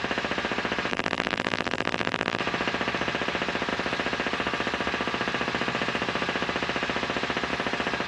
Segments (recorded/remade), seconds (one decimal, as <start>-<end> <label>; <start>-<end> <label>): 0.0-0.9 recorded; 0.9-2.4 remade; 2.4-8.1 recorded

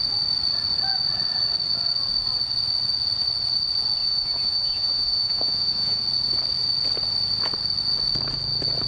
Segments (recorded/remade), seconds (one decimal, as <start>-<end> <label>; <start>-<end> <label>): 0.0-4.0 recorded; 4.0-6.0 remade; 6.0-8.9 recorded

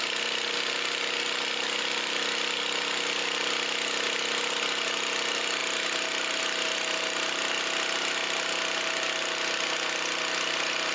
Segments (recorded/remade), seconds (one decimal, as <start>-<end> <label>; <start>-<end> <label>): 0.0-10.9 recorded